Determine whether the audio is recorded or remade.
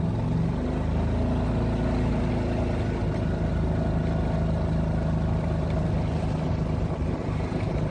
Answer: recorded